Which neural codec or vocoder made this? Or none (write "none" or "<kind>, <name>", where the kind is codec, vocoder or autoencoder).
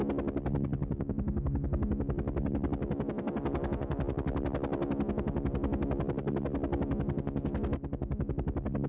none